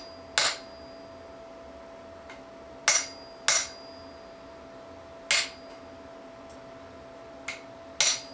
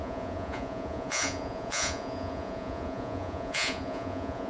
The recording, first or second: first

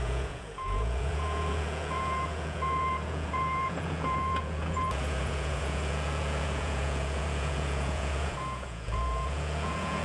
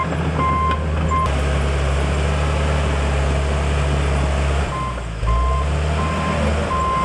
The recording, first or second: second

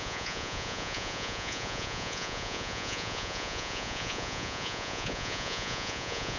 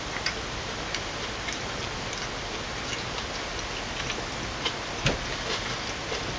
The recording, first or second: second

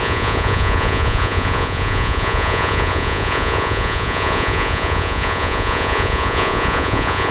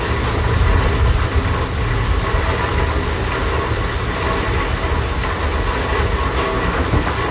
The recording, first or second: second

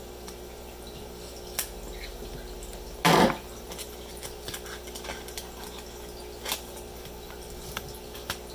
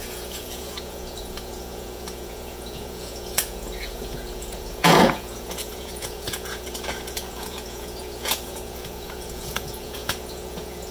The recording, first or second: first